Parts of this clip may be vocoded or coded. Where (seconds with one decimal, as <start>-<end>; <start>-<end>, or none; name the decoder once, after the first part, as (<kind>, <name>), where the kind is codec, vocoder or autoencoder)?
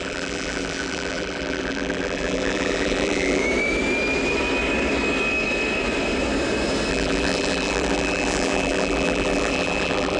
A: 0.0-3.4 (vocoder, BigVGAN v2); 6.9-10.2